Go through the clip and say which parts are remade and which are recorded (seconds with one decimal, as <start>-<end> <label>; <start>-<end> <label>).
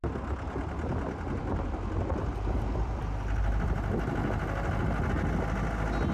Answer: 0.0-1.4 recorded; 1.4-4.8 remade; 4.8-6.1 recorded